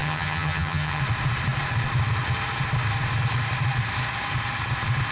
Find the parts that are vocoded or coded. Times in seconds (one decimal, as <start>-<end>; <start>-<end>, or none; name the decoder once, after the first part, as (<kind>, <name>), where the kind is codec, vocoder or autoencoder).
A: 0.0-1.0 (vocoder, HiFi-GAN)